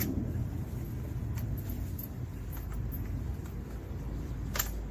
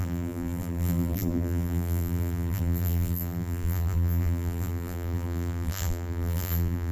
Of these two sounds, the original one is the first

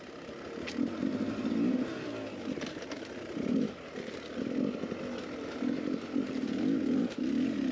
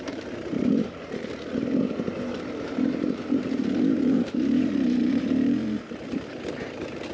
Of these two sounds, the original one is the first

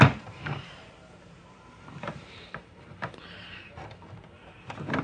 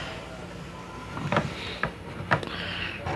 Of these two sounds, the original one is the second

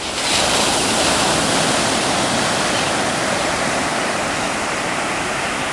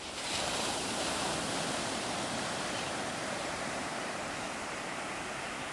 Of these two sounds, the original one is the first